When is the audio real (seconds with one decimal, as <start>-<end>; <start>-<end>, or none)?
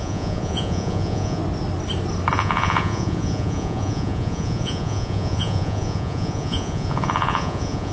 1.4-2.3